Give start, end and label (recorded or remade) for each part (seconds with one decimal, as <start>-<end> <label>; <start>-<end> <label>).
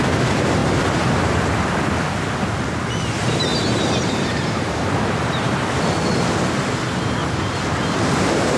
0.0-3.5 recorded; 3.5-5.8 remade; 5.8-7.2 recorded; 7.2-8.6 remade